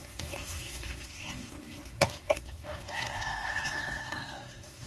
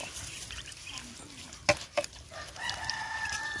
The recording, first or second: second